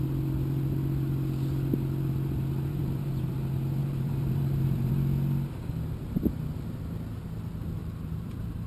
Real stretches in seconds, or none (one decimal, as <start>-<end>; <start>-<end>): 0.0-2.7; 3.3-3.8; 4.9-7.8